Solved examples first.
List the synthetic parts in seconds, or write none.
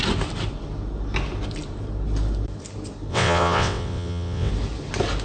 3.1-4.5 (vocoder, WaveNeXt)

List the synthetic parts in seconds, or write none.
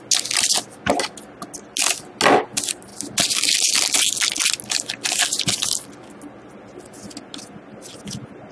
none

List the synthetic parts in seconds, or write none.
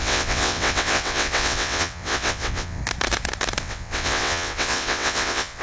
0.0-2.8 (vocoder, WaveNeXt); 3.6-5.6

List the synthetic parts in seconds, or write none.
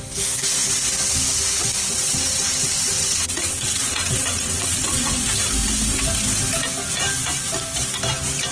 1.9-5.2 (vocoder, WaveNeXt)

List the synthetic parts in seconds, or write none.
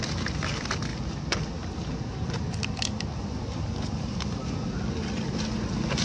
none